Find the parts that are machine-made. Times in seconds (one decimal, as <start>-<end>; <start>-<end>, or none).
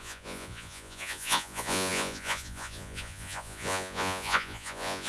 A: 0.0-5.1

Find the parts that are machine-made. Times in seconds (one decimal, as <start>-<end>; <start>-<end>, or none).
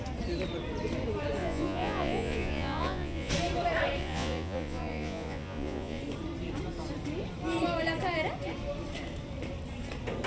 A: 1.4-3.3; 4.0-6.0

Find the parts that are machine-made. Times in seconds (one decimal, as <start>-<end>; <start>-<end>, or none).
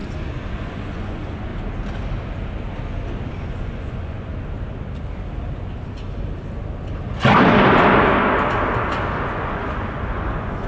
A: 0.5-1.5; 3.3-4.3; 9.3-10.7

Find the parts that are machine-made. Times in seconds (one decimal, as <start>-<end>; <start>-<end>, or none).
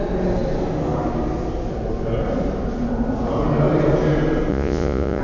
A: 4.5-5.2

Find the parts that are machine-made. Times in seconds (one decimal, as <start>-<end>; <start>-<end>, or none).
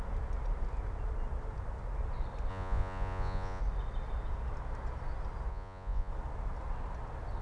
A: 2.5-3.6; 5.5-6.1